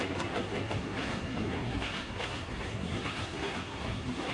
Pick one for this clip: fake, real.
fake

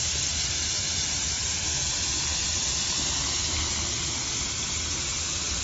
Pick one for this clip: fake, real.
real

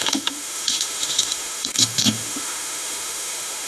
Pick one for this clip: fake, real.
fake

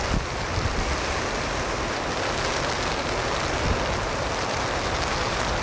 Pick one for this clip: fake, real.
real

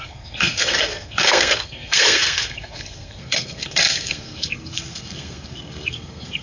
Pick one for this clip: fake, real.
fake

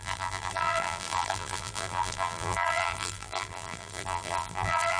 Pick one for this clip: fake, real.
fake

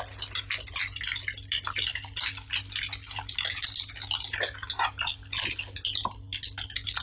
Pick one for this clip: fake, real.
real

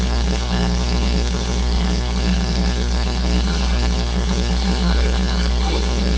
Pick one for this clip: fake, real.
fake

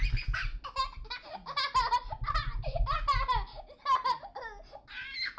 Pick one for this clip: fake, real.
real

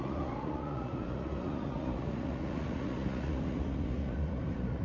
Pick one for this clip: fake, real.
fake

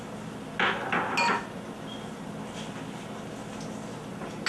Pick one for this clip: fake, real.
real